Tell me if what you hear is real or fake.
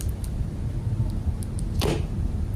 real